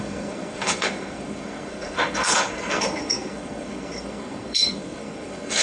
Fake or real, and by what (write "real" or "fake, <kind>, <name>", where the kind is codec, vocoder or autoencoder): fake, codec, SNAC